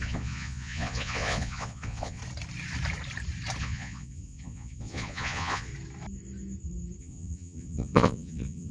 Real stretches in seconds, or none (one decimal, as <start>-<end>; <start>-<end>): 2.2-3.6; 5.7-7.0